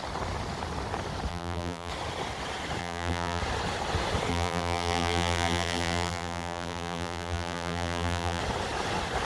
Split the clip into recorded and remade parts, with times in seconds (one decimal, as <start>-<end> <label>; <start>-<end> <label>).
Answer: 0.0-1.3 recorded; 1.3-1.9 remade; 1.9-2.8 recorded; 2.8-3.4 remade; 3.4-4.3 recorded; 4.3-8.4 remade; 8.4-9.2 recorded